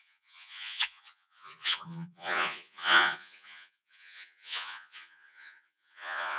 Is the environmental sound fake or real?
fake